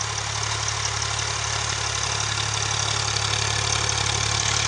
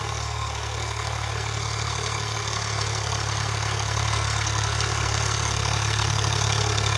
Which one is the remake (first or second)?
second